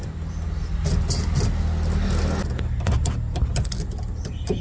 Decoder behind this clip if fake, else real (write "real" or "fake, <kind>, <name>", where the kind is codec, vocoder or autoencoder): real